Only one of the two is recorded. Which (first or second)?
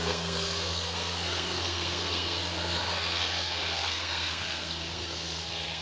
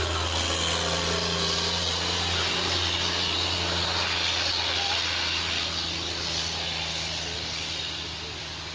second